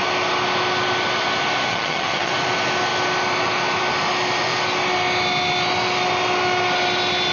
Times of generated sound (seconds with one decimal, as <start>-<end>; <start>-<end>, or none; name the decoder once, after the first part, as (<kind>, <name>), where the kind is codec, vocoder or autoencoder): 1.7-2.3 (vocoder, HiFi-GAN)